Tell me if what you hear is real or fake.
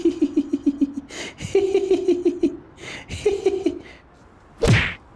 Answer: real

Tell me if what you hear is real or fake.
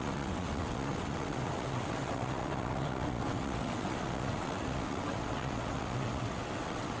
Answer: fake